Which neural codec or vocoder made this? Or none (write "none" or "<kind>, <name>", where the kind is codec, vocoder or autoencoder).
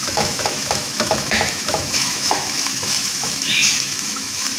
autoencoder, DAC-VAE